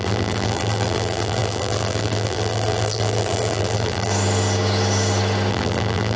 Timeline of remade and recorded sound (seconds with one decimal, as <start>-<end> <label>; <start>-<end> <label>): 0.0-4.1 remade; 4.1-5.5 recorded; 5.5-6.2 remade